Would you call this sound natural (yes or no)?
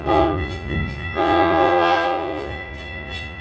no